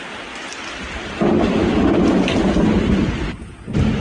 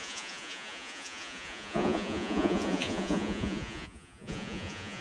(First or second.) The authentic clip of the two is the first